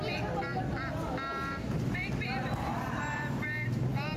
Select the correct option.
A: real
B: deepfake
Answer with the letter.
A